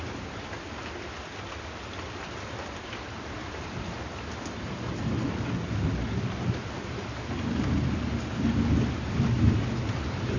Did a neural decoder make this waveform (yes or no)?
no